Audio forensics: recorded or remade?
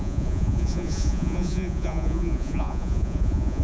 remade